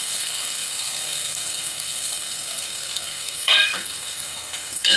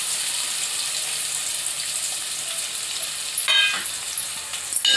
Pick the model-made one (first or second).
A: first